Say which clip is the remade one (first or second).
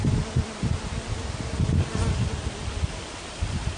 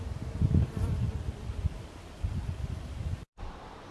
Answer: second